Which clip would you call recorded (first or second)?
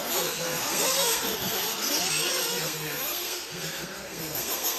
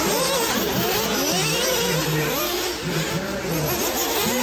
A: second